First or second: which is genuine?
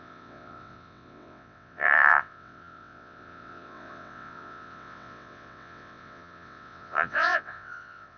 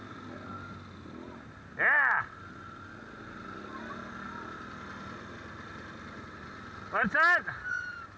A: second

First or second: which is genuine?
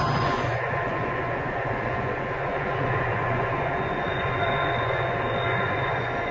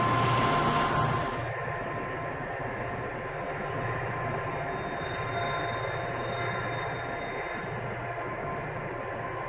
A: second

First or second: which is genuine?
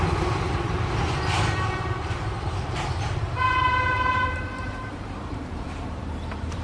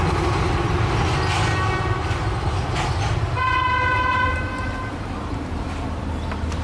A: second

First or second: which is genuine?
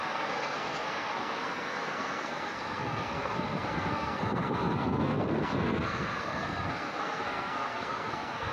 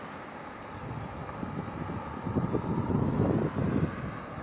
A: second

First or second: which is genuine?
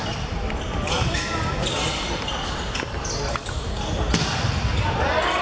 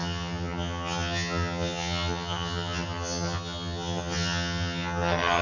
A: first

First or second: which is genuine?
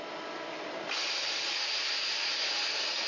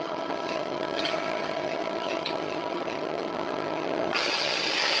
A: first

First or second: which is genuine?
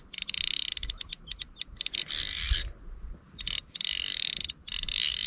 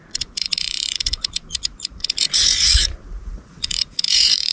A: first